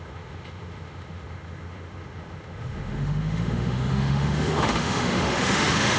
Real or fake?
fake